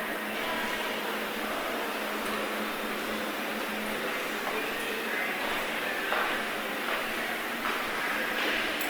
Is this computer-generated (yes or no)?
no